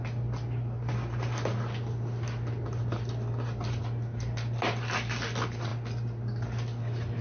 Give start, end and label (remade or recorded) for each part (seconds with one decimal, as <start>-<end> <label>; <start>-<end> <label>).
0.0-7.2 recorded